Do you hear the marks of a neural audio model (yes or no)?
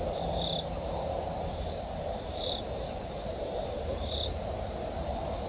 yes